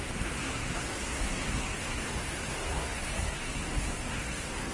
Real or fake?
fake